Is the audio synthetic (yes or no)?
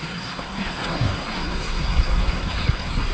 yes